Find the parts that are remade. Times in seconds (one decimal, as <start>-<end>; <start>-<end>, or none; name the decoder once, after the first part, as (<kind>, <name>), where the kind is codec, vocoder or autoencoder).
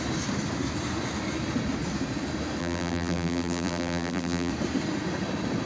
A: 2.6-4.5 (vocoder, BigVGAN v2)